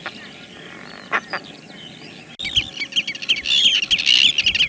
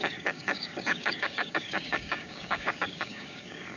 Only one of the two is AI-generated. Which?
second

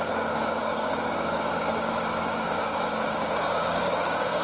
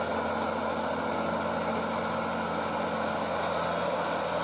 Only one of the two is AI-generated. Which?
first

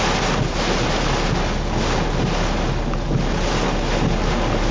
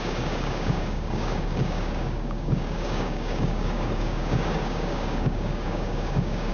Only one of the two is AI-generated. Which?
second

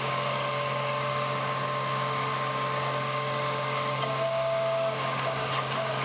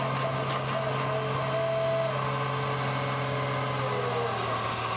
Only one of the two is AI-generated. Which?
first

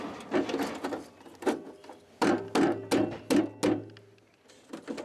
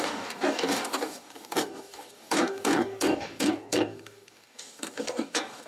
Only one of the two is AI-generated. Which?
second